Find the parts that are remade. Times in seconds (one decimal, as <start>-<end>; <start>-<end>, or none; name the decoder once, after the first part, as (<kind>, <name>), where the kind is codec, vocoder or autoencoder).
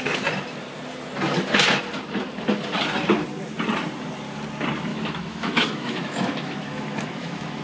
4.9-7.6 (autoencoder, DAC-VAE)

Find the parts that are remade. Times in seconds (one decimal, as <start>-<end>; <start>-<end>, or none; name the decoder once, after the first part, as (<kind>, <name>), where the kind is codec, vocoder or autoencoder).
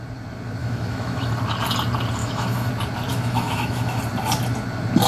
0.6-1.3 (autoencoder, DAC-VAE); 2.2-2.7; 3.1-4.0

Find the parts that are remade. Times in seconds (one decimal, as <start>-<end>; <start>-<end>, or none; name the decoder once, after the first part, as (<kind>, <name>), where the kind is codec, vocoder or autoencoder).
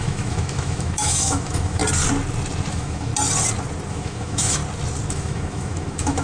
0.0-1.8 (autoencoder, DAC-VAE); 2.7-3.1; 3.9-4.6; 5.1-6.2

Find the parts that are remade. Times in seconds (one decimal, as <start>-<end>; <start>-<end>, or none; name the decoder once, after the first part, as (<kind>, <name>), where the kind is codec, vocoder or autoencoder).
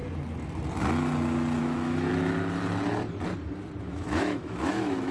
1.6-2.1 (autoencoder, DAC-VAE); 3.8-5.1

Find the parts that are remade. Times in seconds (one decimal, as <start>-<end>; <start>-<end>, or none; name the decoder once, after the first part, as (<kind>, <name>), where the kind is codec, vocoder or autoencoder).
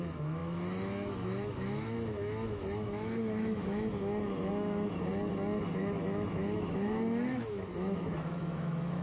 0.0-5.1 (autoencoder, DAC-VAE); 5.8-9.0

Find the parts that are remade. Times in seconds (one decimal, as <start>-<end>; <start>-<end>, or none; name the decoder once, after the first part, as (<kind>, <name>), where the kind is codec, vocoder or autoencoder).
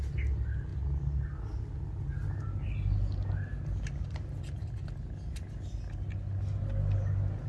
none